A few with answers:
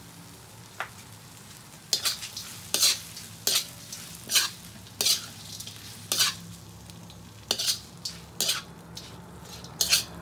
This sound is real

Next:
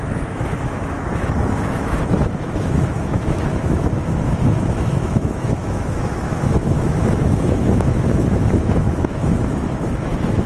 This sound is fake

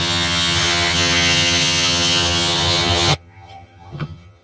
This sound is fake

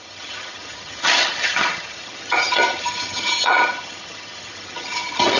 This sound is fake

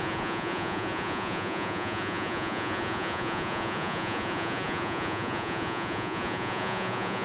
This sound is fake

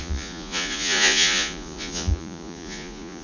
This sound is fake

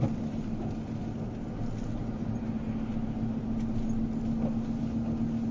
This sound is real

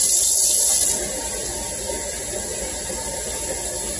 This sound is real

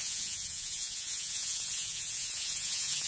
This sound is fake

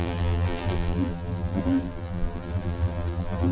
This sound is fake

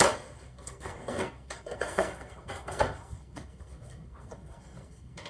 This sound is fake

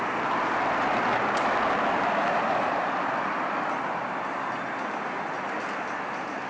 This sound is real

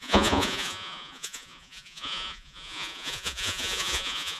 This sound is fake